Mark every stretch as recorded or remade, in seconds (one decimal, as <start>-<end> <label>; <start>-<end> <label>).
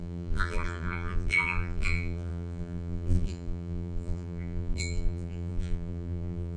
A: 0.0-6.6 remade